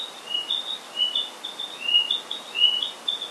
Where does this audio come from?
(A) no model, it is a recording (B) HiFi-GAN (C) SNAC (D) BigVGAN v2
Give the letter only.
A